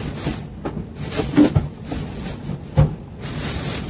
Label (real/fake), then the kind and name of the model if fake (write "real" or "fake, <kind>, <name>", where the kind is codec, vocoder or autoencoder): real